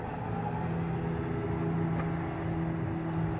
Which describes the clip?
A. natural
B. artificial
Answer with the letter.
A